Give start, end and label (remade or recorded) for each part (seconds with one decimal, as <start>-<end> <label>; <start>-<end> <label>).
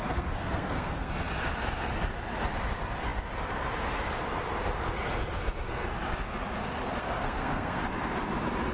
0.0-1.1 remade; 1.1-7.0 recorded; 7.0-7.8 remade; 7.8-8.7 recorded